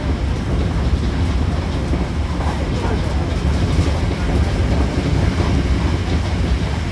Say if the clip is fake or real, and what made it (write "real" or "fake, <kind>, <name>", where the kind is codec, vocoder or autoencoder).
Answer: real